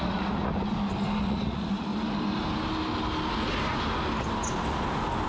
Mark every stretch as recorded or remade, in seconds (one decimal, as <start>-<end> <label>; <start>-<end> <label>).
0.0-0.5 remade; 0.5-1.2 recorded; 1.2-1.9 remade; 1.9-5.3 recorded